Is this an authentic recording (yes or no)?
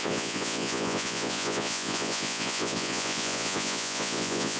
no